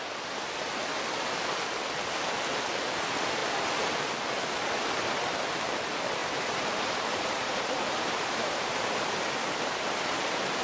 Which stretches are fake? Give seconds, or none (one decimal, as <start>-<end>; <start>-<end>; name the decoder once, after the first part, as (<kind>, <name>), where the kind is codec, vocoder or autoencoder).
6.2-9.1 (vocoder, BigVGAN v2)